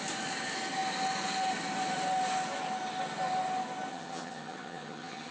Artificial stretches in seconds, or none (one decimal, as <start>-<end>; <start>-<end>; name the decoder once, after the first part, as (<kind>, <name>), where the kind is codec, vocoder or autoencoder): 3.9-5.3 (vocoder, HiFi-GAN)